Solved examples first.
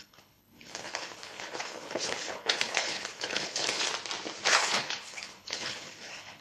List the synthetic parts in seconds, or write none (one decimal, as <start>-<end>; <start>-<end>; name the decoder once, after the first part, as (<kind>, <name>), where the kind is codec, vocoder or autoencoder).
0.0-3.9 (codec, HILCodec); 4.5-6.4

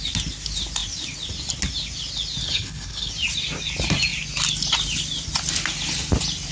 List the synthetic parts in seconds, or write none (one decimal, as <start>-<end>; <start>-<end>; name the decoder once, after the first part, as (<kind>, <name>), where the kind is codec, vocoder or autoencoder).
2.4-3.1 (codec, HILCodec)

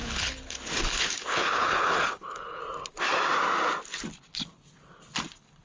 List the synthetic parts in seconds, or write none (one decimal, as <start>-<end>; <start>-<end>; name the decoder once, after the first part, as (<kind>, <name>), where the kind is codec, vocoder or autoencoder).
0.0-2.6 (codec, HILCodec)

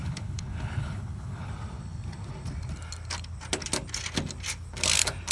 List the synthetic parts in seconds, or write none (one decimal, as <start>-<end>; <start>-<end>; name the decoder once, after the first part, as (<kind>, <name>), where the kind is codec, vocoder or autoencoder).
0.0-1.5 (codec, HILCodec)